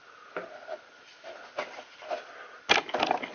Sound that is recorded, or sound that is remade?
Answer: recorded